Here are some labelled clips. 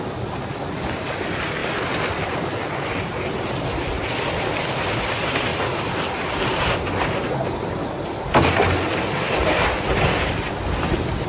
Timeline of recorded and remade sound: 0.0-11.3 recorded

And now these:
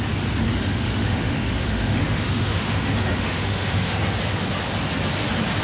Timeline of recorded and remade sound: 0.0-0.5 recorded; 0.5-3.9 remade; 3.9-5.6 recorded

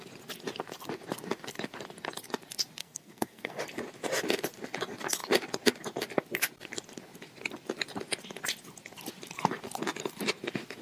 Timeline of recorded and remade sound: 0.0-2.8 recorded; 2.8-3.6 remade; 3.6-10.8 recorded

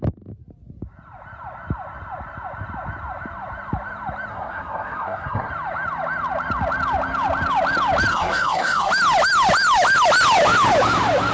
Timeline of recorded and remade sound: 0.0-4.3 recorded; 4.3-5.5 remade; 5.5-8.1 recorded; 8.1-8.9 remade; 8.9-11.3 recorded